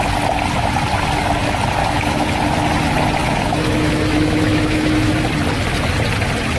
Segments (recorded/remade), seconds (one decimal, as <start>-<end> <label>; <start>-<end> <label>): 0.0-1.8 recorded; 1.8-2.3 remade; 2.3-3.2 recorded; 3.2-5.1 remade; 5.1-6.6 recorded